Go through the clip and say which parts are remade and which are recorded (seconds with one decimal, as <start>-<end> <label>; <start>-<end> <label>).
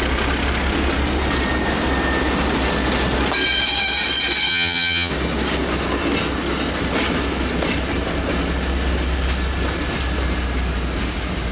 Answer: 0.0-4.5 recorded; 4.5-5.1 remade; 5.1-11.5 recorded